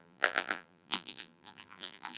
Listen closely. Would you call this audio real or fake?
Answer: fake